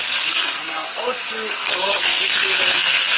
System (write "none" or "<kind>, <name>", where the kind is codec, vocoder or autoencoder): codec, SNAC